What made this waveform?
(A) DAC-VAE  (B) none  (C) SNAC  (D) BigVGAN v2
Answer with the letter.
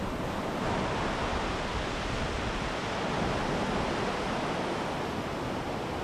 B